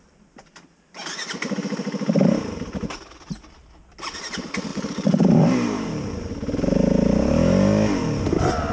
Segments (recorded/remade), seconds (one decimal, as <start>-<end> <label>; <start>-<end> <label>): 0.0-4.7 recorded; 4.7-6.3 remade; 6.3-8.7 recorded